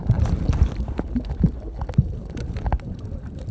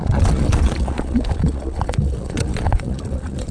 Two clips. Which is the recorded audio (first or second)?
first